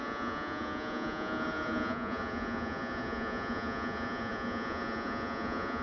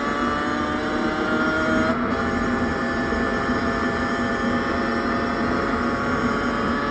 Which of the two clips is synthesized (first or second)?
first